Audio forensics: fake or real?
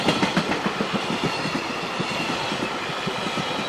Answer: real